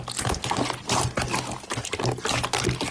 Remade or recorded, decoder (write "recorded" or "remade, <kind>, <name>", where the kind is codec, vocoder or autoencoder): recorded